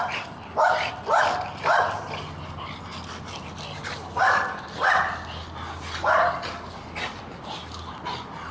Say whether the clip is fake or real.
real